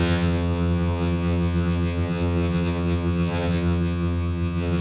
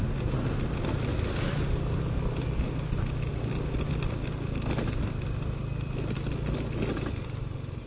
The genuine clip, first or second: second